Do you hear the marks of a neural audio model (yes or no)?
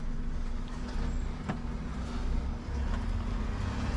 no